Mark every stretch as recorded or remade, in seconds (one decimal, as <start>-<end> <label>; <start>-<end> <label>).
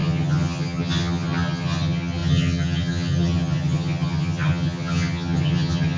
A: 0.0-6.0 remade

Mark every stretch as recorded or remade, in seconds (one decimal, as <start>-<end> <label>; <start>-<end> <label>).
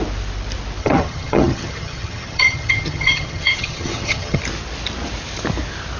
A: 0.0-0.8 recorded; 0.8-4.4 remade; 4.4-6.0 recorded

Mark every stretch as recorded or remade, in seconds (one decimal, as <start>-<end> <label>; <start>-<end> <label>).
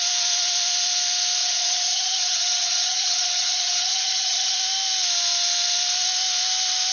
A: 0.0-1.4 recorded; 1.4-4.6 remade; 4.6-6.9 recorded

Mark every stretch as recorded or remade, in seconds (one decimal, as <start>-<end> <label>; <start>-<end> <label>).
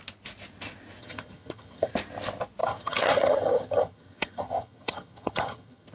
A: 0.0-1.0 recorded; 1.0-1.9 remade; 1.9-2.6 recorded; 2.6-5.9 remade